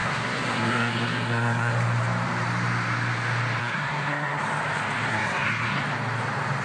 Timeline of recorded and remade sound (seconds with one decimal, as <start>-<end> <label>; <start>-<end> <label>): 0.0-1.7 remade; 1.7-3.6 recorded; 3.6-4.4 remade; 4.4-5.1 recorded; 5.1-5.8 remade; 5.8-6.6 recorded